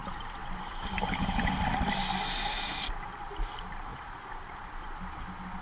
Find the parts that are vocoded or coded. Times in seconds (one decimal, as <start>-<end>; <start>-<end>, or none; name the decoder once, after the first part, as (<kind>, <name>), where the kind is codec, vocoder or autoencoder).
0.0-1.5 (vocoder, BigVGAN v2); 3.9-4.6